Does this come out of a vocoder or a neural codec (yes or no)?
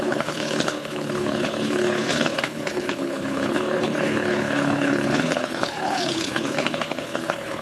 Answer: yes